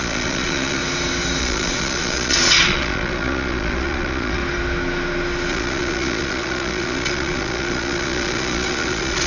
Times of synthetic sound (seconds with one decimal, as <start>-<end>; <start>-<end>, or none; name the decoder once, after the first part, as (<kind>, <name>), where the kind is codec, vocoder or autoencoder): 0.0-0.8 (vocoder, Vocos); 1.4-4.4; 5.5-9.3